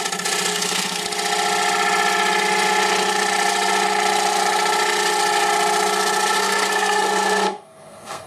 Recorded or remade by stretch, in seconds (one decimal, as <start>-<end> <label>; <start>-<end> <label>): 0.0-0.5 recorded; 0.5-1.0 remade; 1.0-6.4 recorded; 6.4-8.3 remade